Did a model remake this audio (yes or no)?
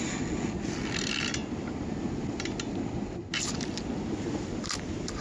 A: no